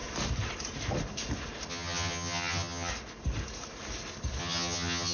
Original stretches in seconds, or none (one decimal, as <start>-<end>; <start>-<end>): 0.0-1.7; 2.9-4.4